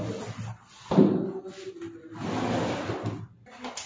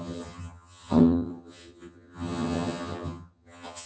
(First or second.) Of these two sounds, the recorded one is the first